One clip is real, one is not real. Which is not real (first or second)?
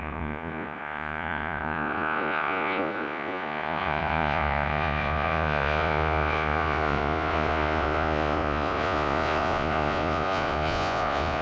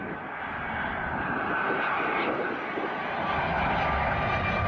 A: first